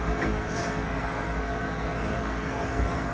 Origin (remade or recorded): remade